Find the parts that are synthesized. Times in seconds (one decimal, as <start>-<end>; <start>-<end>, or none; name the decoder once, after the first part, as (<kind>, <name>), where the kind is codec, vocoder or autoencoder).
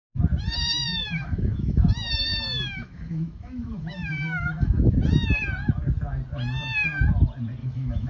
1.0-5.0 (autoencoder, DAC-VAE); 7.6-8.1